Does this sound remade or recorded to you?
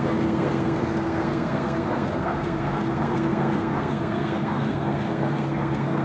remade